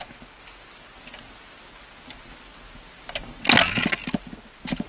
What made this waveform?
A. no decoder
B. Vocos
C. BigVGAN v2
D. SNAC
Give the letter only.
A